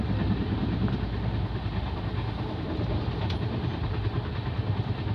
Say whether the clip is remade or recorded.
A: remade